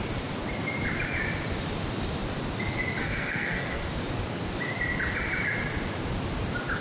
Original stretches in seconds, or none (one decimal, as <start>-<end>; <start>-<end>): 0.0-3.0; 3.9-6.8